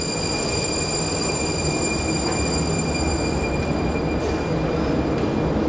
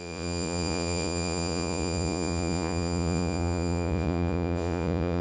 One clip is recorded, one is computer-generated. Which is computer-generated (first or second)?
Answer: second